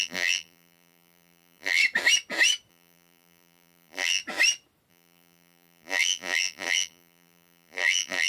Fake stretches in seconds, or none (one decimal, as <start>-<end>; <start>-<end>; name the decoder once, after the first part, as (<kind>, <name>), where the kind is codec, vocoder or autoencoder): 0.0-1.8 (vocoder, BigVGAN v2); 2.7-4.2; 4.9-8.3